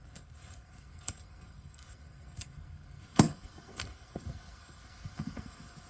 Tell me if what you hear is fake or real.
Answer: fake